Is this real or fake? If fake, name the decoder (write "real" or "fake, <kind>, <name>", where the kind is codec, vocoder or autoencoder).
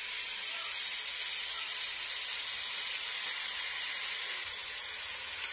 real